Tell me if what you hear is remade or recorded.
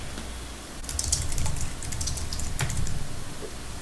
recorded